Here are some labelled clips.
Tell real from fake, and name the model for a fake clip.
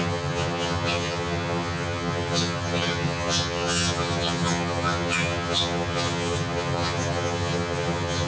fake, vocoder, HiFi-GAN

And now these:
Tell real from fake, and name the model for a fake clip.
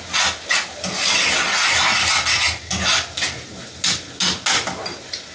real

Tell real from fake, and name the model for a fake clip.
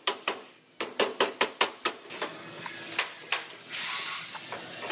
real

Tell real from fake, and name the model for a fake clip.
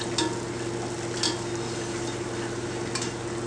real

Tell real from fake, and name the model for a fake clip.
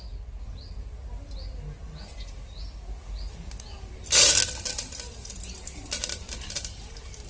real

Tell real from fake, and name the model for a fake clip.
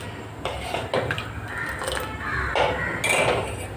real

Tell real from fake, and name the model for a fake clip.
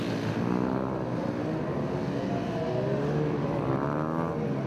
real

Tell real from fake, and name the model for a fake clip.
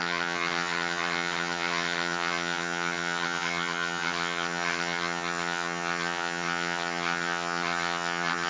fake, vocoder, HiFi-GAN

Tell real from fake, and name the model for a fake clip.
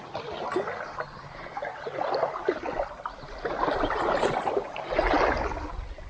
real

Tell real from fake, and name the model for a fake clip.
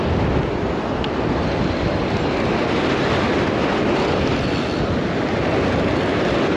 real